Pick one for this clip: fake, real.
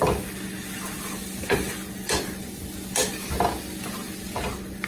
real